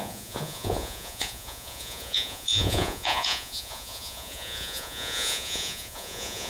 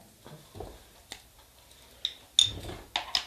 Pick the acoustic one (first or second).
second